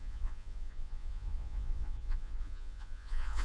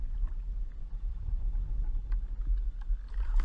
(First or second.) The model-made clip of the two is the first